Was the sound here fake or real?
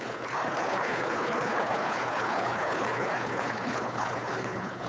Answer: fake